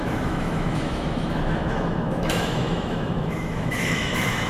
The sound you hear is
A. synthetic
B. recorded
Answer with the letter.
A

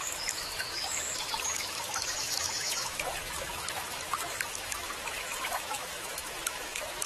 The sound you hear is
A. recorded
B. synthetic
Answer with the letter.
B